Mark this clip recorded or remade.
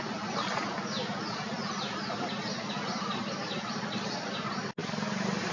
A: recorded